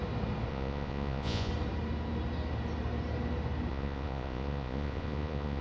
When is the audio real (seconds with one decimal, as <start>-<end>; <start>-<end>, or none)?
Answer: 0.0-0.5; 1.5-3.7

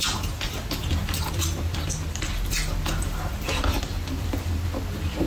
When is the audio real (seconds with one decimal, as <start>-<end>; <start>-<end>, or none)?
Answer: 0.0-5.3

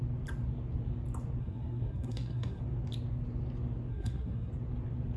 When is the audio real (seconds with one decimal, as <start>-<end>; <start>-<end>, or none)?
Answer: 0.0-1.4; 2.6-3.9; 4.5-5.2